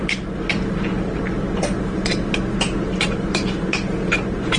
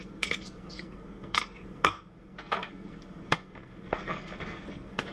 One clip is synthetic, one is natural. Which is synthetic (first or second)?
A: second